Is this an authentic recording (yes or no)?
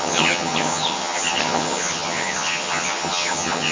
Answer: no